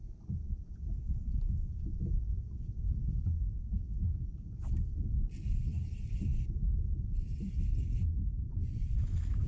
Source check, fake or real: real